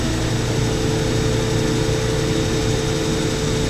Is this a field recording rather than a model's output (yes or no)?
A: yes